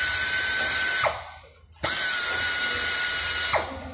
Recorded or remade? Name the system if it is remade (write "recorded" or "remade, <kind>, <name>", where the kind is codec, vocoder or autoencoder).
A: recorded